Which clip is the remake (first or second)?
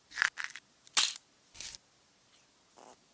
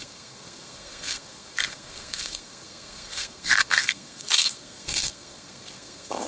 second